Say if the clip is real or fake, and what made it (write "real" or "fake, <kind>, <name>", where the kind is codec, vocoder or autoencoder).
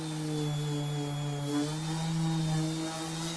real